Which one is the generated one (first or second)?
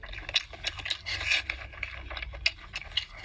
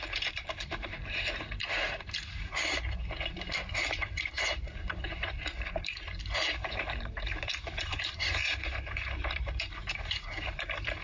second